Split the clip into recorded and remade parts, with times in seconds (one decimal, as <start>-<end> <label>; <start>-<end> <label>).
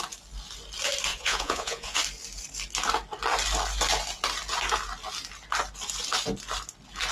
0.0-1.1 recorded; 1.1-2.0 remade; 2.0-7.1 recorded